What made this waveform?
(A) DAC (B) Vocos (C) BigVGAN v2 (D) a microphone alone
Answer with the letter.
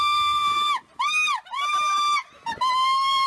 C